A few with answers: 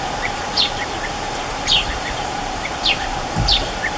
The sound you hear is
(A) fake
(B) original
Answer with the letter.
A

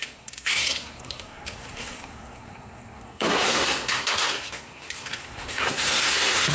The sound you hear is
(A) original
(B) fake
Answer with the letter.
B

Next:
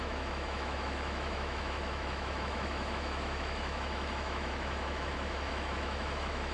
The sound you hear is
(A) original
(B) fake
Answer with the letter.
B